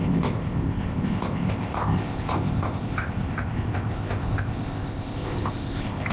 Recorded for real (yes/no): no